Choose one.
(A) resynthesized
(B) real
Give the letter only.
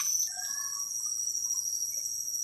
A